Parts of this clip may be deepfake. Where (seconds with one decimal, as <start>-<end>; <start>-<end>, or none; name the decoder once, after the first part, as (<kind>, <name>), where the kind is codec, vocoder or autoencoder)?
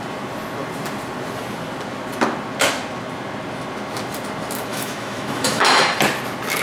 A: 4.7-5.8 (autoencoder, DAC-VAE)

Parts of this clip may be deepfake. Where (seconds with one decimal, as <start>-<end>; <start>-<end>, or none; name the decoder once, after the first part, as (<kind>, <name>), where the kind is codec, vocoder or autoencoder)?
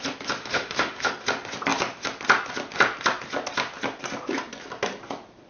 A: 0.4-1.1 (autoencoder, DAC-VAE)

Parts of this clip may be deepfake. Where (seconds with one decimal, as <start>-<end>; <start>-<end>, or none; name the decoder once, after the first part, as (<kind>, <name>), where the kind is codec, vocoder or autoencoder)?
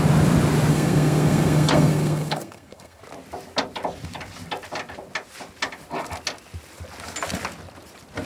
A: 0.7-3.0 (codec, SNAC)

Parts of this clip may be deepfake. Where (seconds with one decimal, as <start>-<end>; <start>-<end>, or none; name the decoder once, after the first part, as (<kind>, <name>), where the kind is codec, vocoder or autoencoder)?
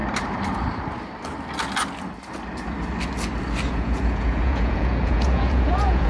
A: 3.7-6.1 (vocoder, Vocos)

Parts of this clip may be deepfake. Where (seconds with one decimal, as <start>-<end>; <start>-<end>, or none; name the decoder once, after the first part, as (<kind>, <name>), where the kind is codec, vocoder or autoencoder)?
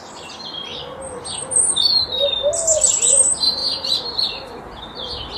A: 3.6-4.8 (vocoder, BigVGAN v2)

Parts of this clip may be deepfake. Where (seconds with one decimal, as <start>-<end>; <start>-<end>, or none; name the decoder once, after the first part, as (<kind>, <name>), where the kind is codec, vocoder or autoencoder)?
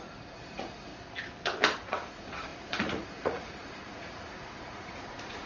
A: 0.0-0.9 (vocoder, Vocos); 1.9-5.5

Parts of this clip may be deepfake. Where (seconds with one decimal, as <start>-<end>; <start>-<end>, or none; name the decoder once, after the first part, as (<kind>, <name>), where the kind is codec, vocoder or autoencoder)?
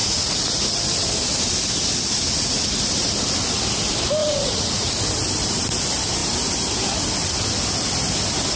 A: 0.0-0.8 (vocoder, Vocos); 4.2-5.0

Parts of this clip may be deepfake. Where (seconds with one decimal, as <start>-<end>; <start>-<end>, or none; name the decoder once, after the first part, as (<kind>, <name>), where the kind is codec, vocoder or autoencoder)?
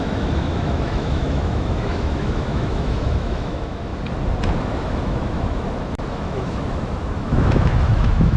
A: 0.0-3.9 (autoencoder, DAC-VAE); 4.6-8.4